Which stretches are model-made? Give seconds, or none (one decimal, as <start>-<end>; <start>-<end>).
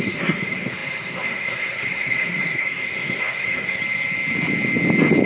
0.0-3.8